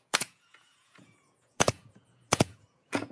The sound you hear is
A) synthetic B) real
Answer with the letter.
A